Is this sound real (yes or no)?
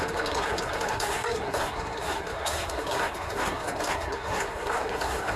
no